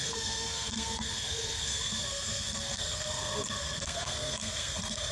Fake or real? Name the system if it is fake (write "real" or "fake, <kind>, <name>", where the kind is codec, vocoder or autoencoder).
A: fake, codec, SNAC